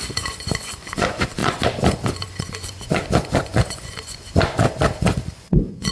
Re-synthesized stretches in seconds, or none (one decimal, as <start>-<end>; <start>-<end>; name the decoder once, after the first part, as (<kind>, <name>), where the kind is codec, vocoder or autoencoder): 0.0-5.9 (vocoder, Vocos)